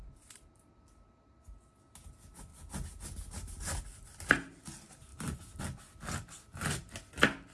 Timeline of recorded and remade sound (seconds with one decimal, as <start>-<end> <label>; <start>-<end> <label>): 0.0-7.5 recorded